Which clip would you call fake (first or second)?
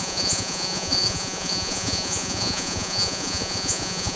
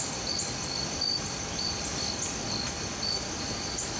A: first